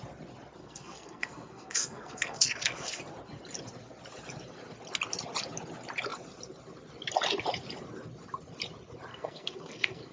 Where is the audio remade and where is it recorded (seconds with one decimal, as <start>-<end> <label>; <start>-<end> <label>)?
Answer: 0.0-0.6 recorded; 0.6-3.0 remade; 3.0-9.1 recorded; 9.1-10.1 remade